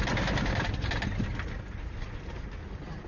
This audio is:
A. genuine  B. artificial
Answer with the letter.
A